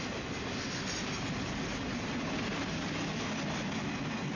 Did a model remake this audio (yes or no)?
no